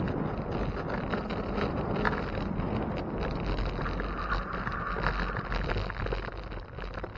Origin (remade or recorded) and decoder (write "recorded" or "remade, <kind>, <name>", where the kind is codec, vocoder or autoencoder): recorded